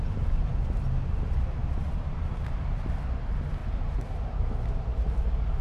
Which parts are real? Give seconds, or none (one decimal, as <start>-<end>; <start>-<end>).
0.0-1.6; 3.0-3.6; 4.5-5.6